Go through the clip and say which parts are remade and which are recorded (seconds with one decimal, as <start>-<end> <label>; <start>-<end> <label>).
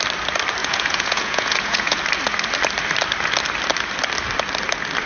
0.0-0.6 recorded; 0.6-2.0 remade; 2.0-5.1 recorded